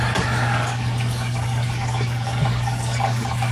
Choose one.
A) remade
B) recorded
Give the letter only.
A